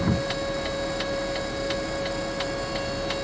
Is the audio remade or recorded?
recorded